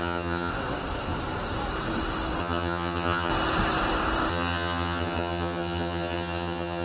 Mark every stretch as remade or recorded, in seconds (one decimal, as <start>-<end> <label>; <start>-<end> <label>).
0.0-0.5 remade; 0.5-2.4 recorded; 2.4-3.3 remade; 3.3-4.3 recorded; 4.3-6.8 remade